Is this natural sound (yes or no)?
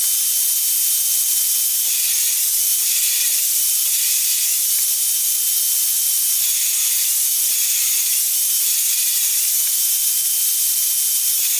yes